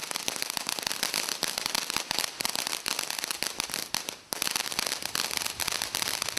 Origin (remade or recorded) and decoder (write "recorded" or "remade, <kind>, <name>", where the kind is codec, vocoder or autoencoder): recorded